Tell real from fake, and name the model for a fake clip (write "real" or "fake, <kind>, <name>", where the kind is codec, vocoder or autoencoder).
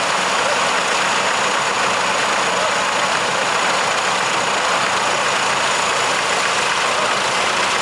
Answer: real